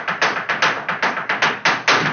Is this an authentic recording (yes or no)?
yes